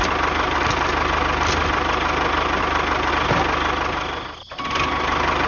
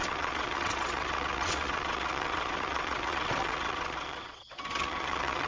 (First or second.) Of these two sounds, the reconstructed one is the second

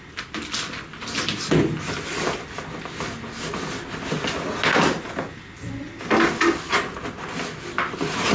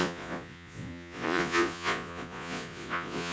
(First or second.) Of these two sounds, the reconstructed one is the second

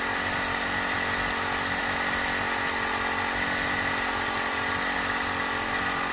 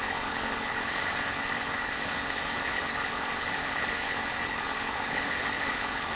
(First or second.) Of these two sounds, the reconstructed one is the second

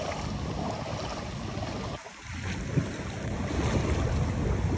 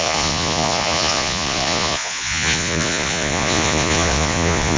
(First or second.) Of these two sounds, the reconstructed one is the second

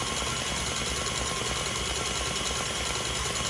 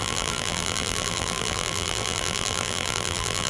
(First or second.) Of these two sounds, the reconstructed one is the second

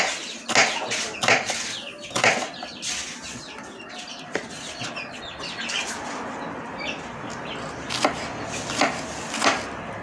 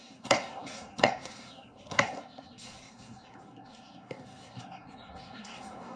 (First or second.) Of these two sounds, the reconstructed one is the second